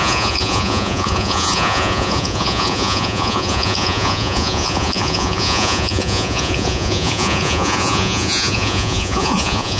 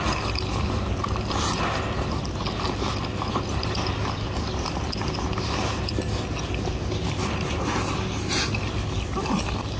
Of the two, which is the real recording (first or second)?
second